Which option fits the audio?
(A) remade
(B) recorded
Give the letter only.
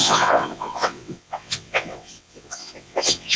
A